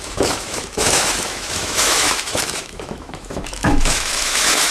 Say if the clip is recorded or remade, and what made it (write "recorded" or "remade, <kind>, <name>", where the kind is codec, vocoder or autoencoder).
remade, autoencoder, DAC-VAE